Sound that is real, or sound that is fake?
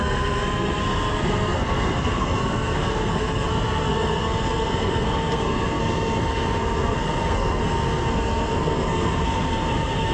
fake